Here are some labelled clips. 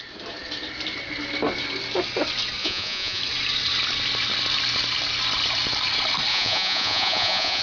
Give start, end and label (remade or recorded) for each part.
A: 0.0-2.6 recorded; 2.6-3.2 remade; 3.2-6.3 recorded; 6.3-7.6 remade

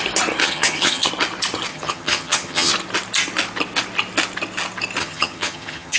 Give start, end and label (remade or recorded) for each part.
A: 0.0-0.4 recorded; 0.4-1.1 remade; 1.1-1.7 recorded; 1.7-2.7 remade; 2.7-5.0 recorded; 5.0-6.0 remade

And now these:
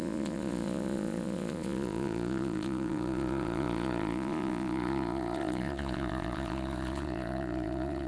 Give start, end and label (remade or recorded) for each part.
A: 0.0-8.1 remade